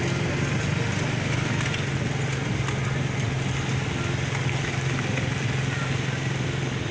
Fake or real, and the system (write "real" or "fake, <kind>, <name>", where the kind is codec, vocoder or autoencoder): real